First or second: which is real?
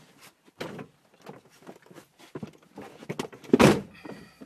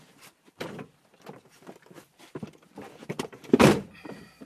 first